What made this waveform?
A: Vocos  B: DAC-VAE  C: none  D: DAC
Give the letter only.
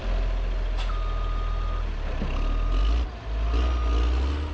C